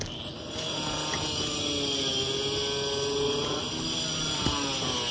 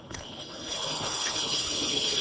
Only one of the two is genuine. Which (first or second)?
first